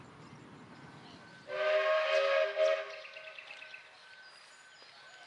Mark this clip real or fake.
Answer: real